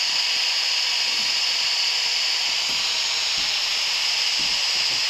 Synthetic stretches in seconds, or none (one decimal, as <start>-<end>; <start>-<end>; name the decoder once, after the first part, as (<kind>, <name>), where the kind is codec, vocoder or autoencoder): none